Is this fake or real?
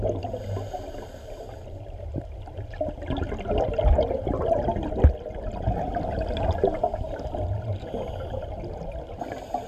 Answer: real